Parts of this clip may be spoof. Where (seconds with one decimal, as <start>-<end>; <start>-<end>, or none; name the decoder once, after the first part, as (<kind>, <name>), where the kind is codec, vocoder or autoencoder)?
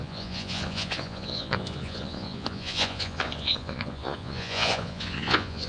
0.0-5.7 (vocoder, Vocos)